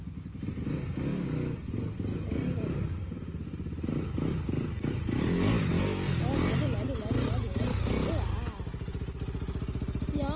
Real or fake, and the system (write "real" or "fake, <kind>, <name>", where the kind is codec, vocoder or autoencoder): real